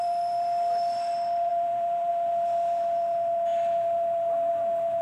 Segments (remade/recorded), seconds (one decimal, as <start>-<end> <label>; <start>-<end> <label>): 0.0-1.5 recorded; 1.5-2.1 remade; 2.1-5.0 recorded